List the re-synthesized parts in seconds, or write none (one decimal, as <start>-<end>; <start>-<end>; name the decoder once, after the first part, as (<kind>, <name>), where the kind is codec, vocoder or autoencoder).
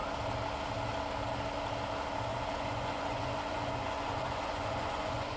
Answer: 2.3-5.4 (vocoder, Vocos)